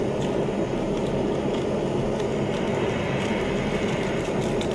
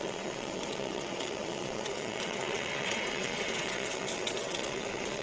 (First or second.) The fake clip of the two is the second